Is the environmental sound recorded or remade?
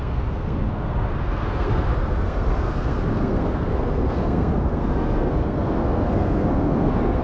remade